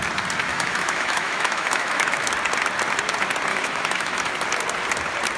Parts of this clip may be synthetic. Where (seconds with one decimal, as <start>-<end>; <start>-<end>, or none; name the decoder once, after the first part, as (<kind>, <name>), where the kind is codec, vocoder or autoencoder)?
0.5-2.3 (autoencoder, DAC-VAE); 3.5-4.3